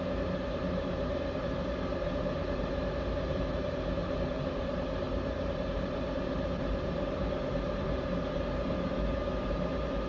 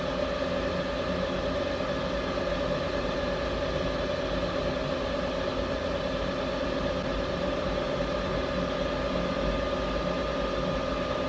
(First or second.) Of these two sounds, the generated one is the first